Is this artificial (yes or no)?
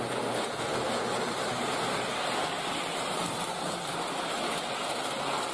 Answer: no